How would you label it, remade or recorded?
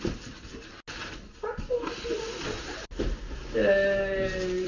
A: recorded